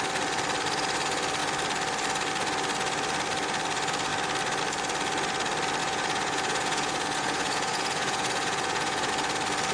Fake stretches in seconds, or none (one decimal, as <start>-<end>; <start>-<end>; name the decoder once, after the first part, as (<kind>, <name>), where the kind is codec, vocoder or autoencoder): 5.8-9.1 (vocoder, Vocos)